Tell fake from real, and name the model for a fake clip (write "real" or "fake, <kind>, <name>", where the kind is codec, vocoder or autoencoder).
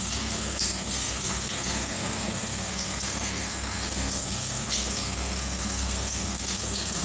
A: fake, codec, SNAC